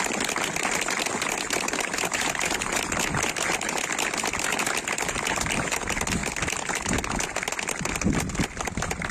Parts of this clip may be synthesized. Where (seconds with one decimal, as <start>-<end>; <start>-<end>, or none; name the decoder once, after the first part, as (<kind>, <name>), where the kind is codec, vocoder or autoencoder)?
6.2-6.8 (vocoder, BigVGAN v2)